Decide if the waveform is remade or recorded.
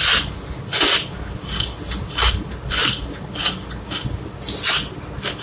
recorded